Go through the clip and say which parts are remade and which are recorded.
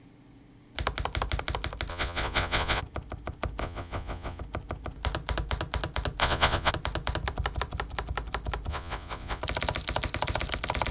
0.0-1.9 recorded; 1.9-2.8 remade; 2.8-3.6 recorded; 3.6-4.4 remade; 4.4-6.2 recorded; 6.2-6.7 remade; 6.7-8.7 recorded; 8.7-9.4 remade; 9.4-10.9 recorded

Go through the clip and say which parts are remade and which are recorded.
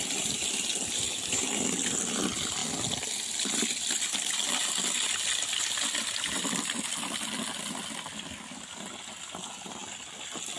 0.0-10.6 recorded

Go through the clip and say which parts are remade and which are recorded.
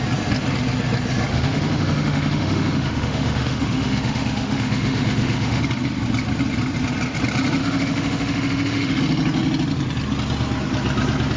0.0-1.3 recorded; 1.3-5.6 remade; 5.6-7.6 recorded; 7.6-9.0 remade; 9.0-11.4 recorded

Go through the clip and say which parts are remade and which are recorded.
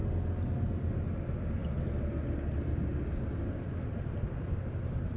0.0-5.2 recorded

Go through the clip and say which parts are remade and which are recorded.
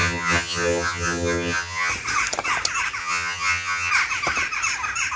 0.0-1.9 remade; 1.9-3.0 recorded; 3.0-3.9 remade; 3.9-5.2 recorded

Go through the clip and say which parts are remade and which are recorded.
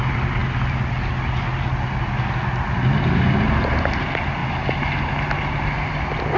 0.0-6.4 recorded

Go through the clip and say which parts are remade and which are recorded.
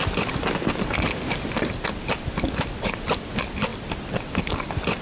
0.0-5.0 recorded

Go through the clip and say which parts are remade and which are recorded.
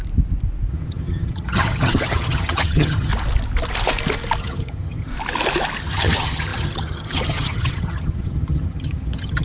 0.0-0.7 recorded; 0.7-3.1 remade; 3.1-4.4 recorded; 4.4-5.1 remade; 5.1-5.8 recorded; 5.8-9.4 remade